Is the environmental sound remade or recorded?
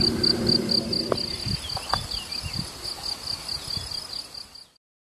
recorded